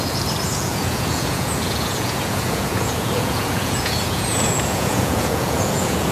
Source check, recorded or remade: remade